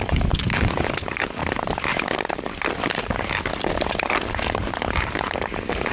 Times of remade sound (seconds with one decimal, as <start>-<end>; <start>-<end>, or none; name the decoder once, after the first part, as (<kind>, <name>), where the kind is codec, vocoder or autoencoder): 0.0-1.4 (codec, DAC); 3.0-3.5; 5.0-5.9